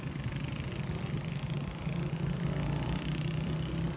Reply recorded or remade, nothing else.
recorded